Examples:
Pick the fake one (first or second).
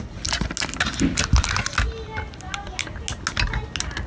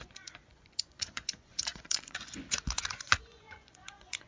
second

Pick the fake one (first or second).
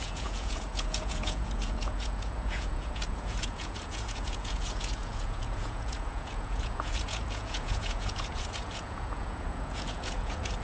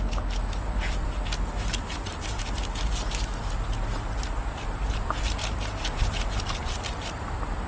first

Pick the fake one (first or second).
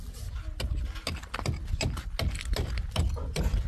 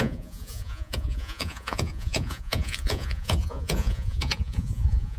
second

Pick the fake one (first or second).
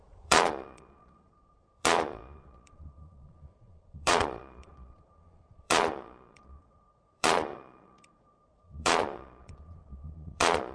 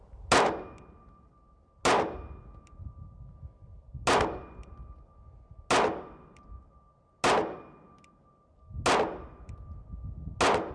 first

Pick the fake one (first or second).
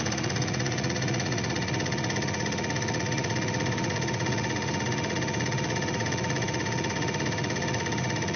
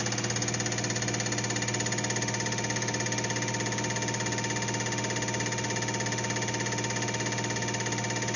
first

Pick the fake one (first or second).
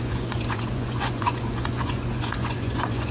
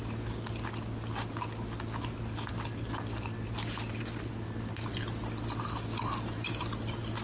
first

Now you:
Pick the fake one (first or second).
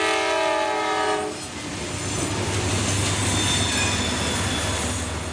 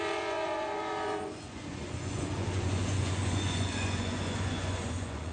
second